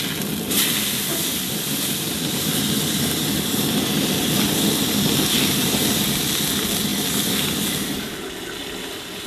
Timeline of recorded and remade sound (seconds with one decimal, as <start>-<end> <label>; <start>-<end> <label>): 0.0-1.1 recorded; 1.1-3.6 remade; 3.6-9.3 recorded